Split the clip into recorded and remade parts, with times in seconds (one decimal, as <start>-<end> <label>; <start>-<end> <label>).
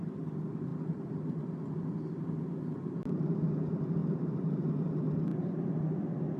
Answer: 0.0-6.4 recorded